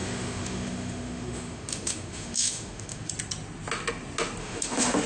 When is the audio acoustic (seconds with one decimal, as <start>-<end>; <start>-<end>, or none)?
3.1-4.4